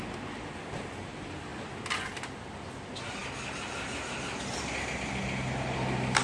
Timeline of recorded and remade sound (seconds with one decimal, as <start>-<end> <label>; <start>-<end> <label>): 0.0-6.2 recorded